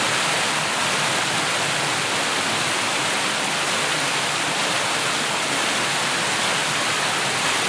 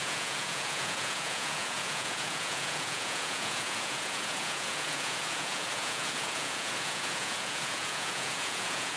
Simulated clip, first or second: second